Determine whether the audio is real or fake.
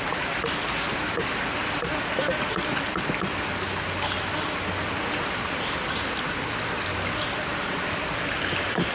real